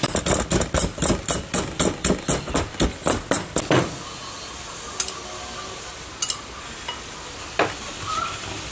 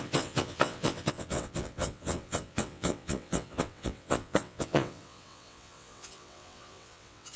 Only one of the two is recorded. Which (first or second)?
first